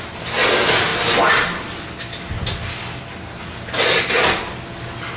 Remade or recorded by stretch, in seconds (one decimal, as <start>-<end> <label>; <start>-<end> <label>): 0.0-5.2 recorded